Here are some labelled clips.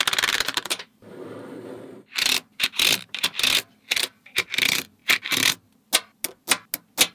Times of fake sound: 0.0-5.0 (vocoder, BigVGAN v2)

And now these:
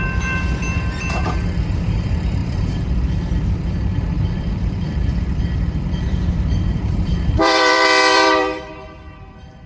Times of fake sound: 0.0-9.7 (vocoder, BigVGAN v2)

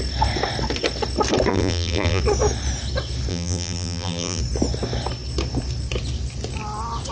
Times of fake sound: 1.5-2.2 (vocoder, BigVGAN v2); 3.3-4.4